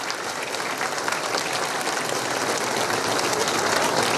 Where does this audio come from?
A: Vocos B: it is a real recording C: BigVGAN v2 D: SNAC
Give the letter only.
B